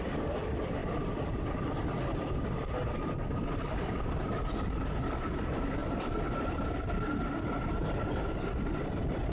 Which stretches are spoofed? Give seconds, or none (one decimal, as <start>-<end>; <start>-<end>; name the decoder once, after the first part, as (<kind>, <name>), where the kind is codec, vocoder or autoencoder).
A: 0.8-1.9 (vocoder, BigVGAN v2); 5.8-8.1